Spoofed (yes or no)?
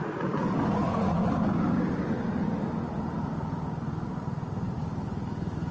no